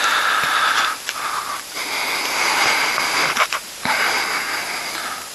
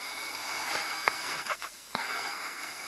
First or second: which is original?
first